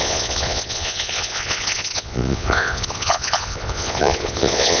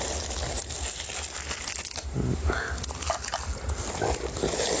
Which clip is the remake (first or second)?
first